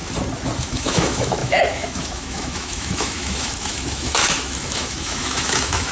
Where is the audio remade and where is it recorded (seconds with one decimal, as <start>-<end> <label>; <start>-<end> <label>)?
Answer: 0.0-0.6 recorded; 0.6-5.9 remade